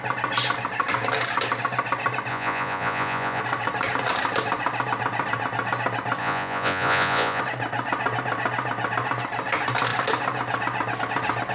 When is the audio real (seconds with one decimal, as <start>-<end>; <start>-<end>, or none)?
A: 0.0-2.3; 3.4-6.2; 7.4-11.5